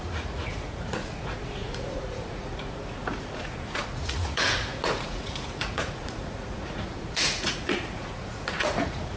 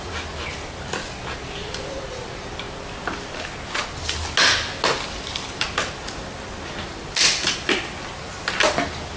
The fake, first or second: first